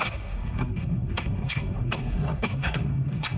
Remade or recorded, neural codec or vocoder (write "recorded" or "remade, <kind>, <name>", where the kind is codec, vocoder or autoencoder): remade, codec, SNAC